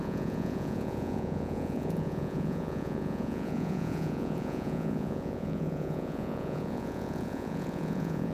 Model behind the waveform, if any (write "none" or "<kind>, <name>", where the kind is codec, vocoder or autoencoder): vocoder, Vocos